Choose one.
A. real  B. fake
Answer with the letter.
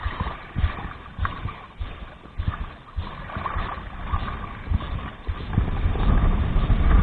A